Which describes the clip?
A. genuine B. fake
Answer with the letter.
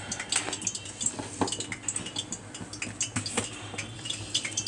A